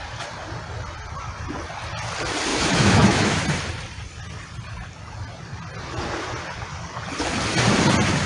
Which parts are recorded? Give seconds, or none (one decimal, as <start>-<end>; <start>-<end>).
0.0-2.5; 3.4-8.3